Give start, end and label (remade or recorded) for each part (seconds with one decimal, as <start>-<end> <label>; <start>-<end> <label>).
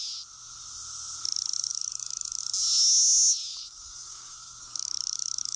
0.0-1.7 recorded; 1.7-2.4 remade; 2.4-3.5 recorded; 3.5-5.6 remade